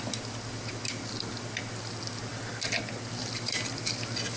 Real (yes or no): yes